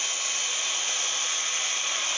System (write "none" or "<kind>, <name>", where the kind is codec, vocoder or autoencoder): vocoder, BigVGAN v2